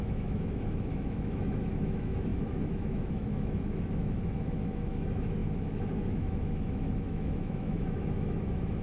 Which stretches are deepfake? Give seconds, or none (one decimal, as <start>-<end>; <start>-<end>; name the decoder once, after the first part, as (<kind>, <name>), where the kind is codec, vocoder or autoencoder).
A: 0.0-8.8 (autoencoder, DAC-VAE)